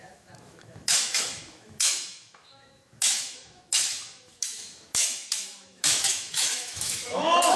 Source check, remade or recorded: remade